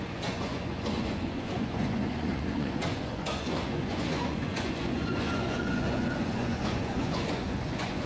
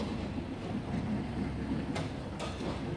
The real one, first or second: second